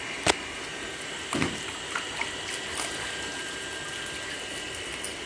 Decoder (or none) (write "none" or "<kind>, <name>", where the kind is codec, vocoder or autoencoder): none